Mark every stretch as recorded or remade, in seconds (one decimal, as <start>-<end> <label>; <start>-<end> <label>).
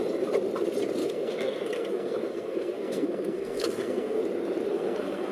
0.0-1.0 recorded; 1.0-4.2 remade; 4.2-4.7 recorded; 4.7-5.3 remade